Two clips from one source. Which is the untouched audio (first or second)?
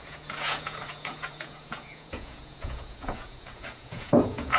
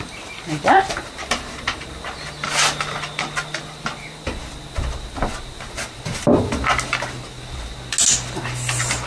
second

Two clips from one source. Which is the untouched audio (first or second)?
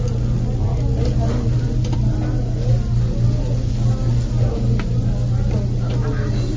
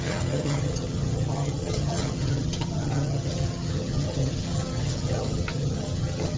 first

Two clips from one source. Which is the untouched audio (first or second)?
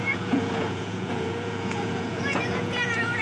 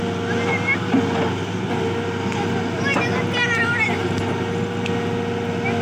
second